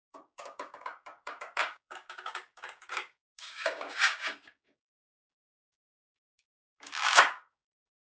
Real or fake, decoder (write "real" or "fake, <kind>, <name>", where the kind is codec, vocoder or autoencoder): fake, codec, DAC